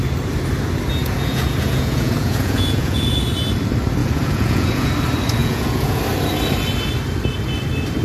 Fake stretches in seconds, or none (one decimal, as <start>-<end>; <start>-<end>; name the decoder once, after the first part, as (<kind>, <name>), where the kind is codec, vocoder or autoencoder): 1.0-3.3 (vocoder, Vocos); 4.0-4.9; 5.4-6.0